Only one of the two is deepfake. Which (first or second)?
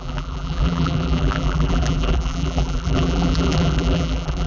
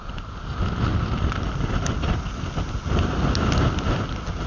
first